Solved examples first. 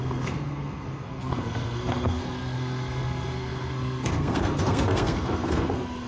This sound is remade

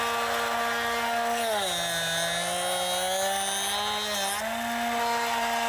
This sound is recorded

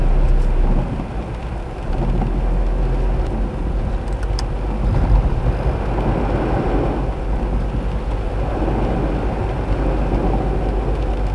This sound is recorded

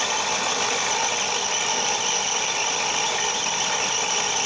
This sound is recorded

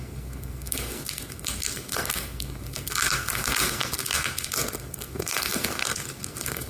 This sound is remade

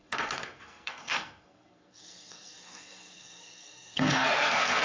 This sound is remade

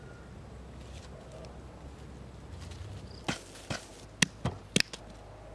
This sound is recorded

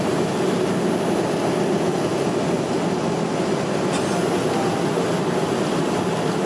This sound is recorded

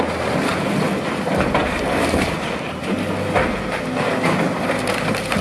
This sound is recorded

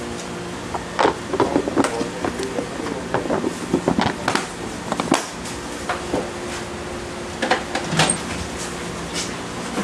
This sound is recorded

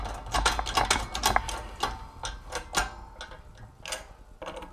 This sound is recorded